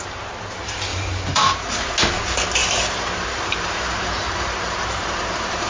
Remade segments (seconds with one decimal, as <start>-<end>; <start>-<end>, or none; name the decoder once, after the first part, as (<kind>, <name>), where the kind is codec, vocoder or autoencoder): 0.9-1.9 (vocoder, BigVGAN v2); 2.6-5.7